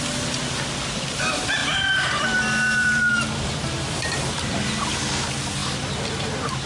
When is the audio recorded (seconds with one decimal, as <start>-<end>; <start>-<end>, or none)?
0.0-1.6; 4.6-5.6